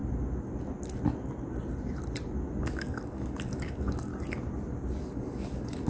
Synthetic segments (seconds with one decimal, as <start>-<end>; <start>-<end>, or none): 2.6-4.1; 5.0-5.9